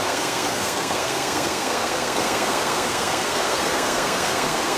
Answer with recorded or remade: remade